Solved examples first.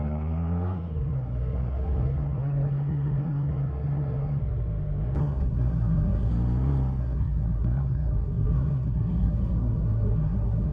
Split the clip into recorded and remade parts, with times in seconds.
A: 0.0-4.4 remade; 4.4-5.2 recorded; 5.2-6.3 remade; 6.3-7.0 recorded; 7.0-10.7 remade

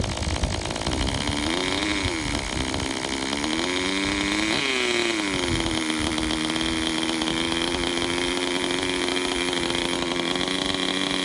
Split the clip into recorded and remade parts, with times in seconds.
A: 0.0-11.2 recorded

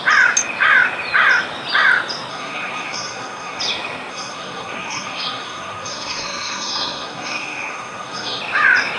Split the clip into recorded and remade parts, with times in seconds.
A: 0.0-2.3 recorded; 2.3-3.6 remade; 3.6-4.1 recorded; 4.1-8.4 remade; 8.4-9.0 recorded

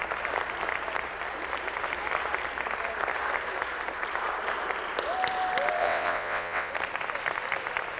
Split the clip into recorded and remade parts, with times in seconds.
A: 0.0-5.8 recorded; 5.8-6.7 remade; 6.7-8.0 recorded

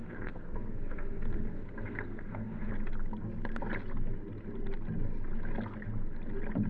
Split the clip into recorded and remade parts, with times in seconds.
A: 0.0-2.7 remade; 2.7-6.7 recorded

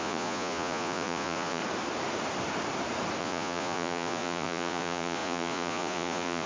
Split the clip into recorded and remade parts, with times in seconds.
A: 0.0-1.6 remade; 1.6-3.2 recorded; 3.2-6.5 remade

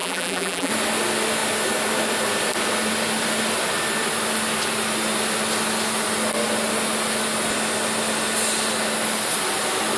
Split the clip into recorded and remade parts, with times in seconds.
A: 0.0-0.7 remade; 0.7-10.0 recorded